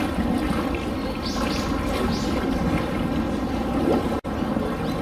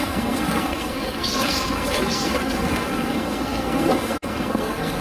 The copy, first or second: second